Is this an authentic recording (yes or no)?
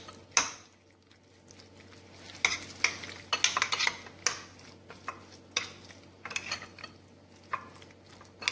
yes